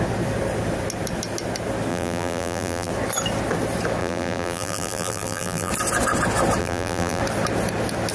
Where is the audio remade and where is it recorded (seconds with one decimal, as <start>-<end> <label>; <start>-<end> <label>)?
0.0-1.9 recorded; 1.9-2.9 remade; 2.9-4.0 recorded; 4.0-5.7 remade; 5.7-6.6 recorded; 6.6-7.2 remade; 7.2-8.1 recorded